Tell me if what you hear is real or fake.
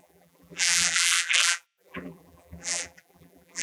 fake